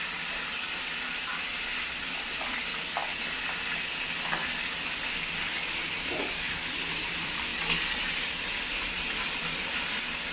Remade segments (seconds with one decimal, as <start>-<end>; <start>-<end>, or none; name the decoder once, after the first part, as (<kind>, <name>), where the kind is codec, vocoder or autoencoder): 0.0-3.0 (vocoder, BigVGAN v2); 5.3-7.5; 8.2-10.3